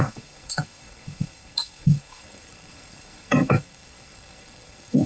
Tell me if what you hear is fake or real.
fake